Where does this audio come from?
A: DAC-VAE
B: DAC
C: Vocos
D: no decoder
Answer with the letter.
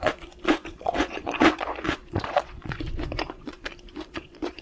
C